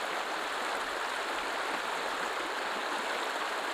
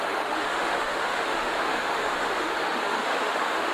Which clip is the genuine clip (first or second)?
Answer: first